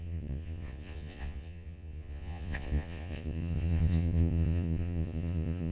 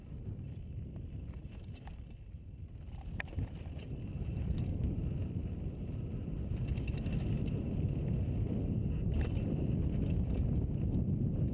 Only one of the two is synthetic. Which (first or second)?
first